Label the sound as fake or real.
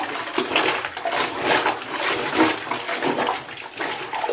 real